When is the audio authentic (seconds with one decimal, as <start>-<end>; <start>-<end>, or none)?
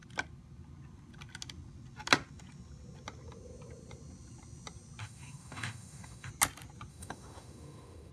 0.0-5.0; 6.3-6.9